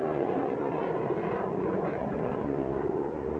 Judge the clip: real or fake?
fake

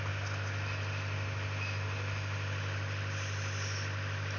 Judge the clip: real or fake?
real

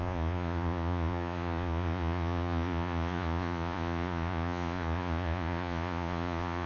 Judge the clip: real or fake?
fake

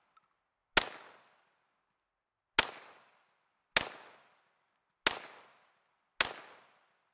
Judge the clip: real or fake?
real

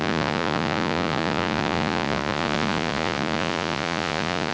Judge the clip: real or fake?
fake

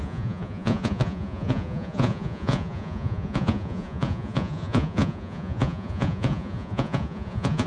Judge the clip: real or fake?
fake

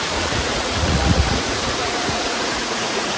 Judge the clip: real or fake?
fake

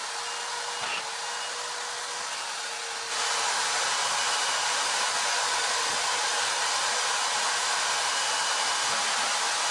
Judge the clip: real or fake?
real